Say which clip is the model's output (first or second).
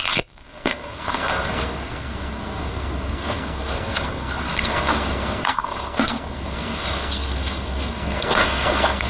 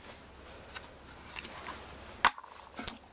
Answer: first